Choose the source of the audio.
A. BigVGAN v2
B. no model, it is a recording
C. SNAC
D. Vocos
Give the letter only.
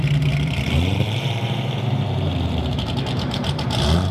A